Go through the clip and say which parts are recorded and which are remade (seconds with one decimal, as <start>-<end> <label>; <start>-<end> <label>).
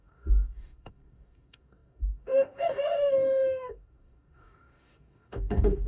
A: 0.0-5.9 remade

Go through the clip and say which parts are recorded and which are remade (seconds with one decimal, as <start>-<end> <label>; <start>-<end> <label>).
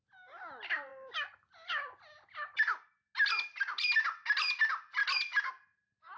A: 0.0-6.2 recorded